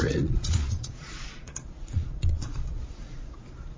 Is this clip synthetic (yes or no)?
yes